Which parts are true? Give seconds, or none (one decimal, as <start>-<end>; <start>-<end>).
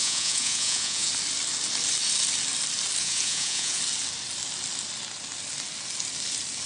1.1-3.0; 3.8-6.7